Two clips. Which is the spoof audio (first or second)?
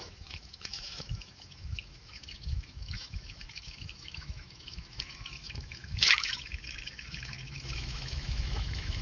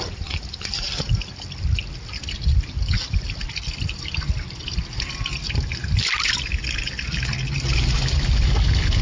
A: first